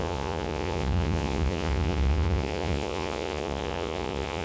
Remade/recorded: remade